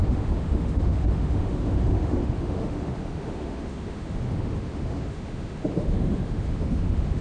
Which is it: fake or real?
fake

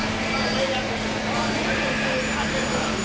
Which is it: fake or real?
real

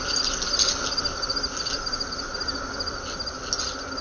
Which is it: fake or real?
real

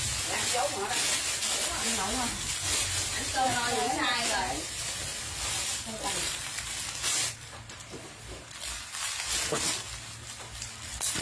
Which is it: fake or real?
real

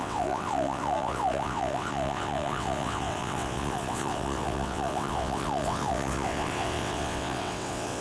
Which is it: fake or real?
fake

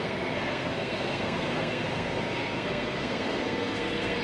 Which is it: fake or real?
fake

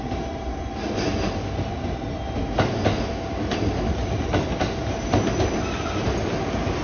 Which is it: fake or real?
real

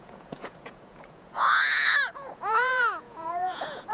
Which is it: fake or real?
fake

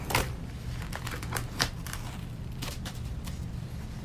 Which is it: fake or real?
fake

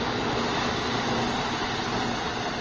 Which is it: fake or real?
real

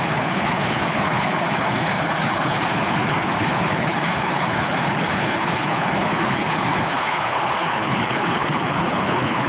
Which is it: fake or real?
fake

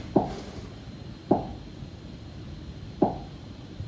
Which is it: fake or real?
real